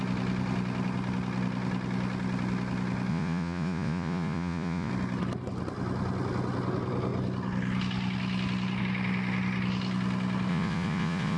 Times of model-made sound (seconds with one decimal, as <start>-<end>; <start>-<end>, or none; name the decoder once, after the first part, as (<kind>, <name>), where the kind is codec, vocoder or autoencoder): 3.1-4.9 (vocoder, Vocos); 10.5-11.4